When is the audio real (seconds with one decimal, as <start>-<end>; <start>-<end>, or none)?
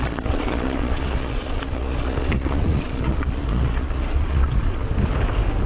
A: 4.8-5.7